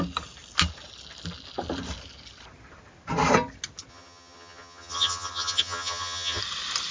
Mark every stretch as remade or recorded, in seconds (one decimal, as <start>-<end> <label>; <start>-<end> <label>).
0.0-3.9 recorded; 3.9-6.4 remade; 6.4-6.9 recorded